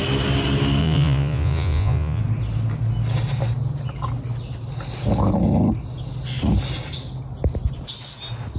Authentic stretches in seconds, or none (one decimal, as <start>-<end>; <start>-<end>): 0.0-0.8; 2.2-8.6

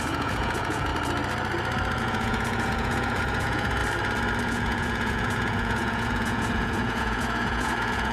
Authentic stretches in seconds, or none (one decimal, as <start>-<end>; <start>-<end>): 0.9-2.0; 3.8-4.4

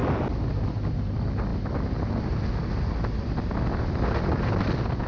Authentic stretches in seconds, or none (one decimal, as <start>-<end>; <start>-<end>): 0.0-5.1

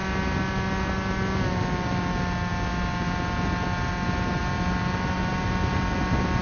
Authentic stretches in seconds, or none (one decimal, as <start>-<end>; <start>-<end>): 0.0-6.4

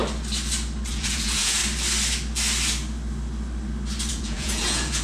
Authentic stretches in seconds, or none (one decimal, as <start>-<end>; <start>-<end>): 0.0-0.9; 1.6-4.1

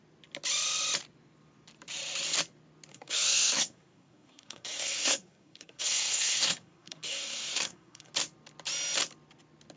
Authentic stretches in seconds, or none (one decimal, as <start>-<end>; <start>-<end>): 0.0-2.9; 8.1-9.8